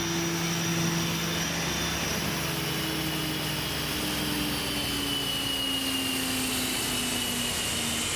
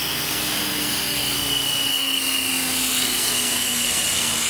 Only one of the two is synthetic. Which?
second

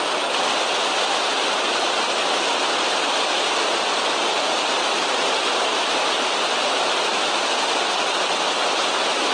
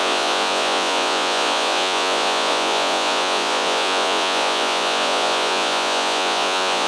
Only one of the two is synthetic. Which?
second